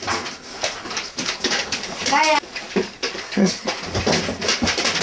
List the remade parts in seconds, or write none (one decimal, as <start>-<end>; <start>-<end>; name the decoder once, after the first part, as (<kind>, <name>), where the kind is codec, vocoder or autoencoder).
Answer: 0.5-3.5 (codec, DAC)